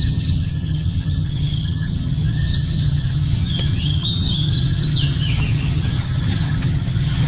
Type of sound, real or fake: fake